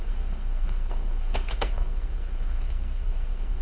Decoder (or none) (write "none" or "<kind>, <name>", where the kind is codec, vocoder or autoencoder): codec, SNAC